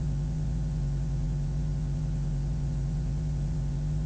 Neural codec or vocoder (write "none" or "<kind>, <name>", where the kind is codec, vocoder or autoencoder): vocoder, Vocos